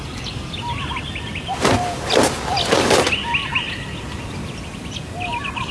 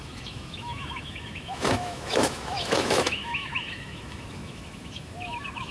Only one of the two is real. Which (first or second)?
first